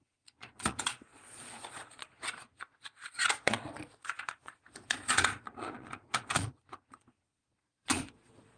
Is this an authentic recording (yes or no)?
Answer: no